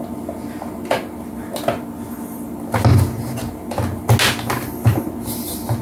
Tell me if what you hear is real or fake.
real